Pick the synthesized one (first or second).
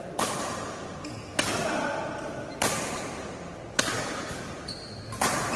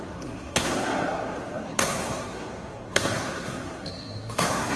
second